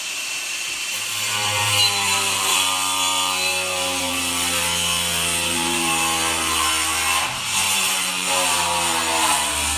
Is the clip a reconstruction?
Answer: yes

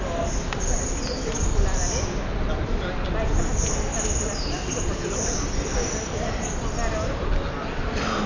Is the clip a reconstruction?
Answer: no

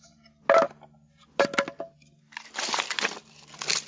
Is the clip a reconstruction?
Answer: no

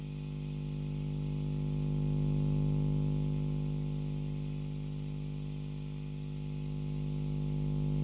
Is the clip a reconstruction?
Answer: no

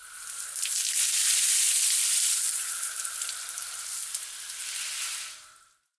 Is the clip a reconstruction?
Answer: no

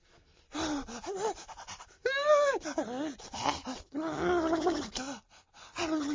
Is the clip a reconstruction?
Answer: no